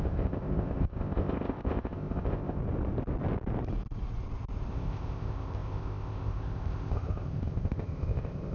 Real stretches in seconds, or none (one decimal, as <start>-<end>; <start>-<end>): 2.6-4.7